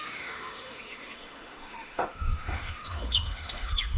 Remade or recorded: remade